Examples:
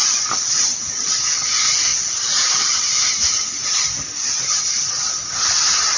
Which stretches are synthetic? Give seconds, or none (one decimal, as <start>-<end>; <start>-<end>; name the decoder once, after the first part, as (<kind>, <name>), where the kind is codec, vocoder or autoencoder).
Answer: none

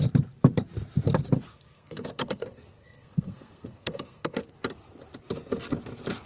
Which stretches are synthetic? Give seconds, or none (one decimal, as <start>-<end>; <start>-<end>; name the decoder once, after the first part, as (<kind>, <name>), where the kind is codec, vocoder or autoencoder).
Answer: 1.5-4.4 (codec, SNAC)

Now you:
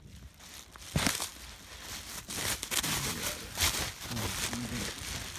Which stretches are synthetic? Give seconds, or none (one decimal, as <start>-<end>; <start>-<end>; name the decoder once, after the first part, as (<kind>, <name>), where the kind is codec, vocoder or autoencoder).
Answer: none

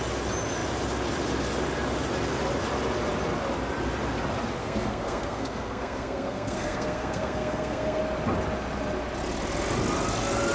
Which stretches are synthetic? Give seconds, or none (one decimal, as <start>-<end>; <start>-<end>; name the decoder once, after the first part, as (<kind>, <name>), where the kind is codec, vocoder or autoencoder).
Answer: 4.6-8.0 (codec, SNAC)

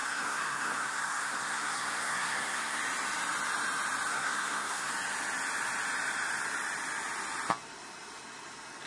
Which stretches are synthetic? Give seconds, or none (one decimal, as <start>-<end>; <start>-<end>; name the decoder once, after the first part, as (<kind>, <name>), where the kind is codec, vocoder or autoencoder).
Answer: 0.0-2.8 (codec, SNAC); 4.1-4.9

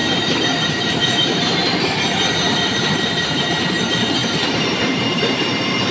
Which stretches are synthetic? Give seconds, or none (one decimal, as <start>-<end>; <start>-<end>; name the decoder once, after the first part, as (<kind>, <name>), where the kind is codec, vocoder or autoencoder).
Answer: 0.0-3.4 (vocoder, BigVGAN v2); 4.2-5.9

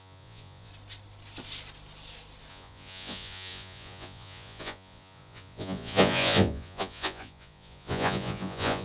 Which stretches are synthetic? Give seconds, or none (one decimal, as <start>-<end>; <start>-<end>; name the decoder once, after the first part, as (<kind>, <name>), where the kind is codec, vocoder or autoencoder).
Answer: 0.0-0.7 (vocoder, Vocos); 2.5-8.8

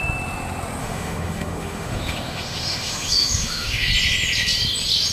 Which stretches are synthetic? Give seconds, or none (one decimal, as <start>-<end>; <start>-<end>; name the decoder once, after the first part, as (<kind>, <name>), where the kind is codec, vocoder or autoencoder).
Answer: 0.8-3.9 (autoencoder, DAC-VAE)